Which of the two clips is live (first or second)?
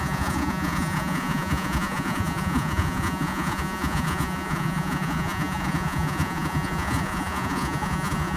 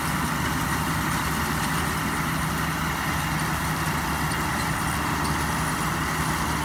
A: second